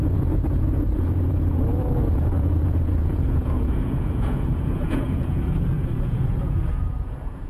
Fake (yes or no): yes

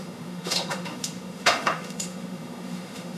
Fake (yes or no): yes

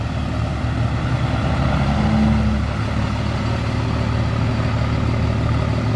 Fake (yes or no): no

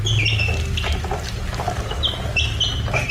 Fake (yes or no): no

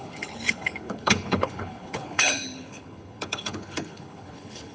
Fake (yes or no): yes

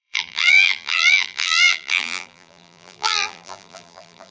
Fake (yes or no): yes